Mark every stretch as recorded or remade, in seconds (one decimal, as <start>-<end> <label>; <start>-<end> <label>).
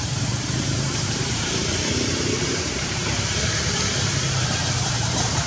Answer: 0.0-1.6 remade; 1.6-2.4 recorded; 2.4-5.5 remade